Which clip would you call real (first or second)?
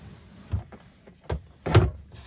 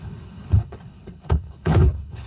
first